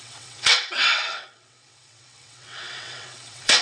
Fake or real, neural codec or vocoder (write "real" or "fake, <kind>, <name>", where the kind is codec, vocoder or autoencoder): fake, vocoder, WaveNeXt